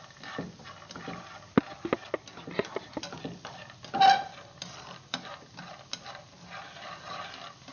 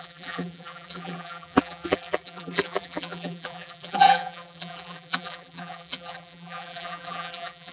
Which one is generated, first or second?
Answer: second